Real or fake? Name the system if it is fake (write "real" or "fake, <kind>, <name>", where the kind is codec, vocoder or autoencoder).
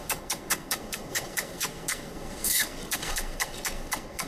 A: fake, codec, SNAC